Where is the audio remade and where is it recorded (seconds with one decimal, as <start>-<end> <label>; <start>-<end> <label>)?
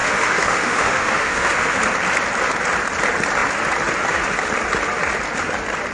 0.0-1.8 remade; 1.8-5.9 recorded